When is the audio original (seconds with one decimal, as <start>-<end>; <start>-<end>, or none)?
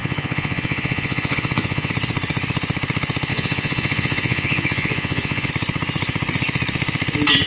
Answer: 1.9-3.3; 5.5-7.5